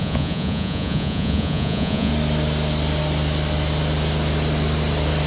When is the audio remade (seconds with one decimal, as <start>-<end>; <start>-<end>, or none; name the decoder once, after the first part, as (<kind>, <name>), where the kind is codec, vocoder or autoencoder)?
0.0-2.1 (vocoder, Vocos)